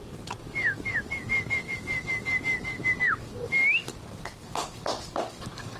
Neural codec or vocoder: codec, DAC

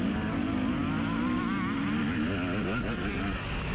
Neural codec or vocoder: none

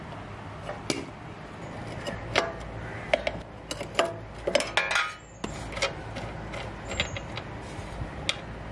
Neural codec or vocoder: none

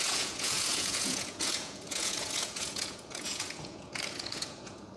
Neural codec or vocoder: vocoder, Vocos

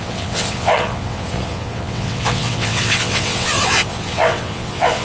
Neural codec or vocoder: vocoder, WaveNeXt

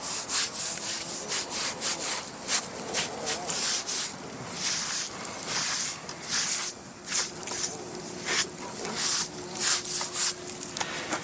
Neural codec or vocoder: none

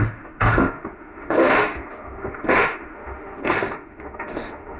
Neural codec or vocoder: autoencoder, DAC-VAE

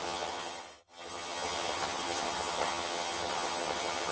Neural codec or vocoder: vocoder, HiFi-GAN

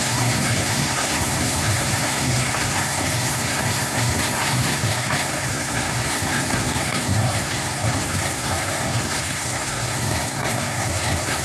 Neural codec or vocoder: codec, SNAC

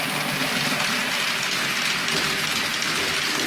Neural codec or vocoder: vocoder, BigVGAN v2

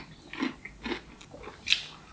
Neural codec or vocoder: none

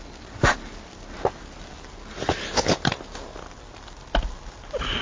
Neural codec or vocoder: none